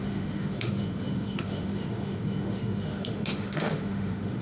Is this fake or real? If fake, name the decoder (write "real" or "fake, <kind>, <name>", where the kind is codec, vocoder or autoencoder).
fake, autoencoder, DAC-VAE